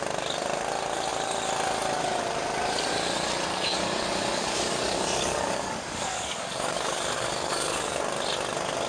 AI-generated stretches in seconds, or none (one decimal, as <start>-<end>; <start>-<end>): 3.5-8.0